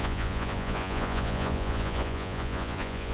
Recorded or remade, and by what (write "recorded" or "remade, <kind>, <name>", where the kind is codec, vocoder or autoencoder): remade, vocoder, Vocos